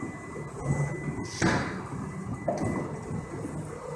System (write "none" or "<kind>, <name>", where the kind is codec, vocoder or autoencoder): none